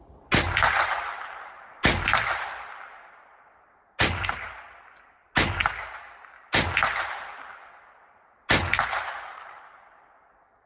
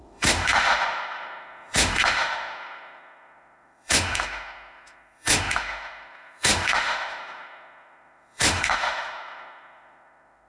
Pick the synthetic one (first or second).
second